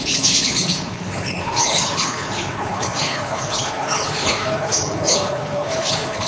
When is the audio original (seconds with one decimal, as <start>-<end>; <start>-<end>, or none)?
none